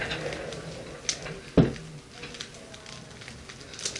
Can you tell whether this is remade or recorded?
recorded